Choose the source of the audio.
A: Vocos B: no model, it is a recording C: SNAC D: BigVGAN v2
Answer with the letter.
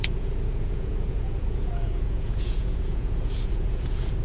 A